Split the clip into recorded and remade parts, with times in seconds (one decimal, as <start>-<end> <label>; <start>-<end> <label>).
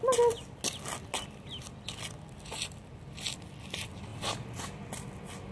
0.0-5.5 recorded